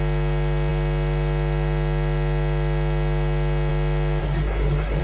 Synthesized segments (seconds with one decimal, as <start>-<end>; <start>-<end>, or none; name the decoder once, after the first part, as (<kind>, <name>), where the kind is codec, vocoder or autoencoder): 4.2-5.0 (codec, SNAC)